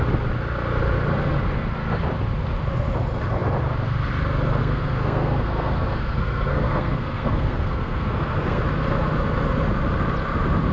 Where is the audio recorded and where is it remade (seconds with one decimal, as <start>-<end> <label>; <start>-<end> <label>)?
0.0-4.6 recorded; 4.6-8.6 remade; 8.6-10.7 recorded